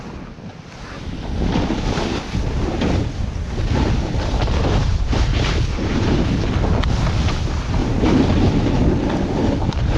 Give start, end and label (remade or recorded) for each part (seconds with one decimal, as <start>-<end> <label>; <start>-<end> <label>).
0.0-4.9 recorded; 4.9-6.5 remade; 6.5-7.8 recorded; 7.8-8.7 remade; 8.7-10.0 recorded

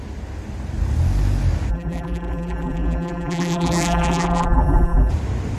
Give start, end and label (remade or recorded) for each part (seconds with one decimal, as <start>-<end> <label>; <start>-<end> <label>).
0.0-1.7 recorded; 1.7-5.1 remade; 5.1-5.6 recorded

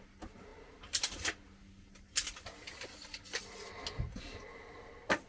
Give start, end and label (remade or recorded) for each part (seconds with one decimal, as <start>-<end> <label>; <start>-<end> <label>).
0.0-5.3 recorded

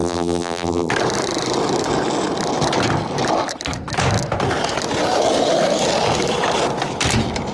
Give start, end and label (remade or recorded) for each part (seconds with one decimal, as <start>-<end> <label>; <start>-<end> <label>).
0.0-0.9 remade; 0.9-7.5 recorded

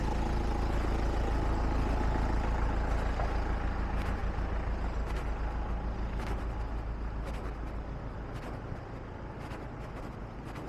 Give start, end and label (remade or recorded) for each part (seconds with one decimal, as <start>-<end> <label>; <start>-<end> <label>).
0.0-10.7 recorded

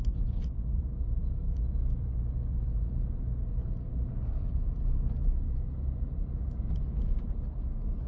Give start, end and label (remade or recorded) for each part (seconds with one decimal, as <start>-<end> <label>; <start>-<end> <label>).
0.0-8.1 remade

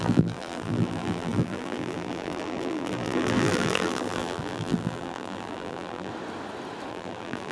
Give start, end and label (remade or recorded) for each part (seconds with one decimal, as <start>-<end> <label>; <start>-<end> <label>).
0.0-6.1 remade; 6.1-6.9 recorded; 6.9-7.5 remade